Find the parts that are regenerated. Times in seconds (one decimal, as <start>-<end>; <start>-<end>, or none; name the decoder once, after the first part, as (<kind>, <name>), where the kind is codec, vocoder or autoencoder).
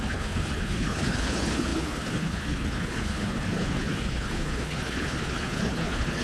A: 0.0-6.2 (codec, HILCodec)